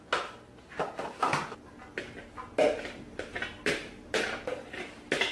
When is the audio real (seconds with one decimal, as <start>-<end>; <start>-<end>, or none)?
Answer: 0.0-3.3